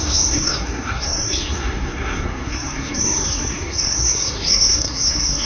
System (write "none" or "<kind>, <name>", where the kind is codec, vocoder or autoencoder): codec, SNAC